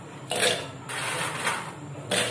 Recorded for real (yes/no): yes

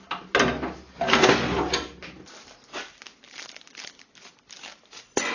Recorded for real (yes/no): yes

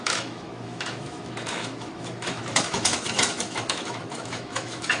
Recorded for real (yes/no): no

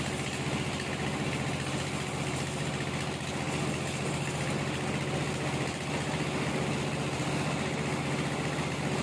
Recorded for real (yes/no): yes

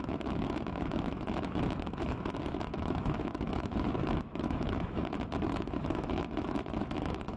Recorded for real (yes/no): no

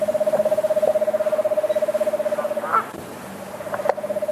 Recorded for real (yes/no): yes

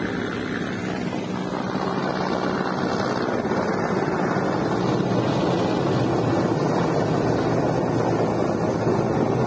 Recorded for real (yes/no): yes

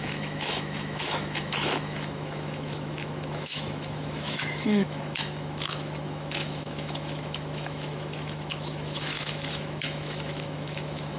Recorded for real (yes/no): no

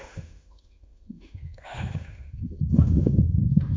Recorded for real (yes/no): no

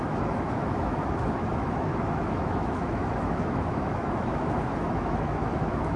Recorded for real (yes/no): no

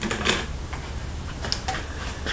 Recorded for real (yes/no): yes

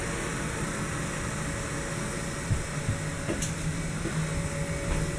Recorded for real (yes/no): yes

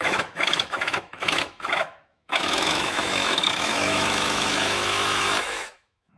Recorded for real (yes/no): no